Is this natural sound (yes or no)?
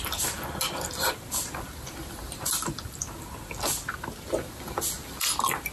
yes